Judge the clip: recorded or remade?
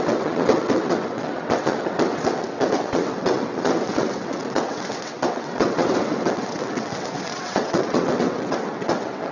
remade